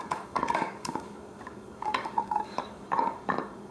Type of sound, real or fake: fake